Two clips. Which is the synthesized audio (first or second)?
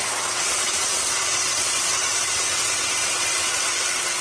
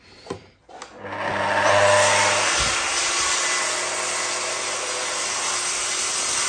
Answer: first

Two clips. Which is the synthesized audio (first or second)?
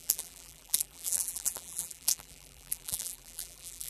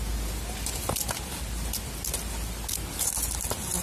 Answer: first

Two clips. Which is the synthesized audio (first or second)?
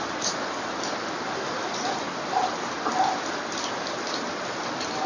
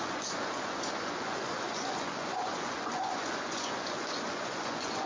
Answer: second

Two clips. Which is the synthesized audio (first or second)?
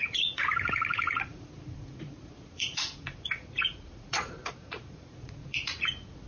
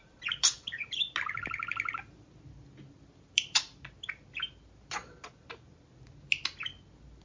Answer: first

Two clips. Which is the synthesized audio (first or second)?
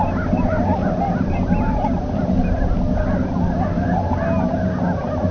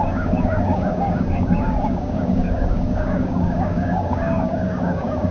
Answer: second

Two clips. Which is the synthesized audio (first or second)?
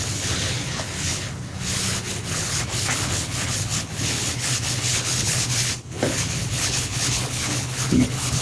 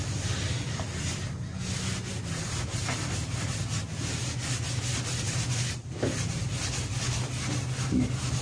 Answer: first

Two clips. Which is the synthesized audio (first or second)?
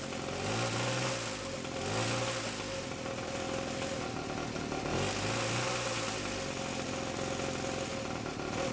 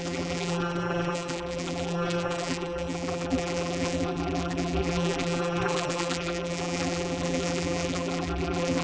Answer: second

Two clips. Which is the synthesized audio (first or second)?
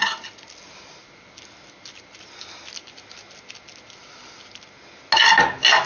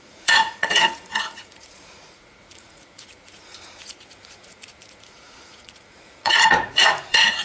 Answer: second